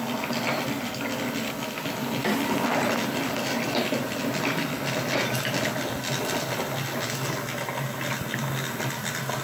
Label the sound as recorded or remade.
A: recorded